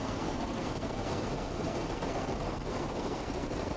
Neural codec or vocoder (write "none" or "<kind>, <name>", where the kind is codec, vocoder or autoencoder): codec, SNAC